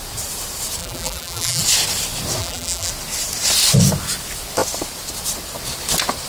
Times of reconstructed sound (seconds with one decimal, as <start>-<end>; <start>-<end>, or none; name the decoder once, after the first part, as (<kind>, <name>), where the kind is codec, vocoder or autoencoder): 0.8-1.6 (vocoder, BigVGAN v2); 2.4-2.9